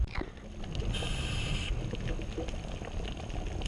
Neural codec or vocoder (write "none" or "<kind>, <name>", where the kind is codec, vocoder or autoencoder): none